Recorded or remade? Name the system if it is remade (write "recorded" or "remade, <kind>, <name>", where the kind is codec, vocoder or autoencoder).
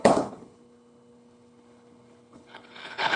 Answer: remade, codec, HILCodec